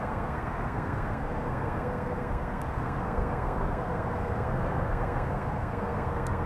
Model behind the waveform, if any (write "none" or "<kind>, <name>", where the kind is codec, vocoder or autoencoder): codec, SNAC